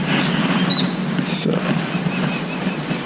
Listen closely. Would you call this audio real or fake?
real